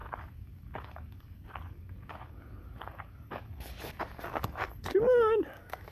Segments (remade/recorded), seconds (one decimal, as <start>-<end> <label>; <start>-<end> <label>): 0.0-5.9 remade